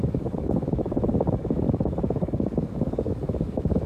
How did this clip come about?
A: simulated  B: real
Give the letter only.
A